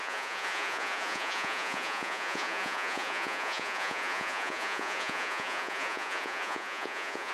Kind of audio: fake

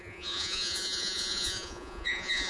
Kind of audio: fake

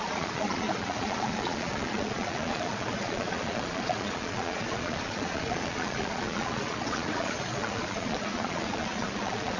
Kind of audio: fake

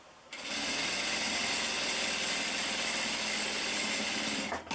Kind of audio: real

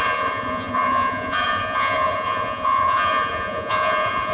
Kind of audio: fake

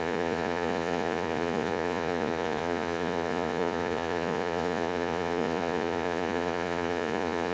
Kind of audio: fake